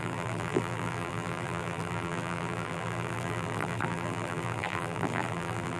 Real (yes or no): no